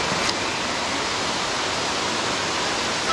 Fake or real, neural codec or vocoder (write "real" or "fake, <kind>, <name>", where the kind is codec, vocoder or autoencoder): real